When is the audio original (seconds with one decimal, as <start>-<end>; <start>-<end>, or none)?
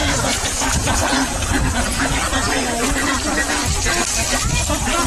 1.5-2.3; 2.9-5.1